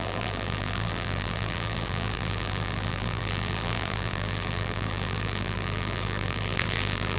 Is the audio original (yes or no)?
no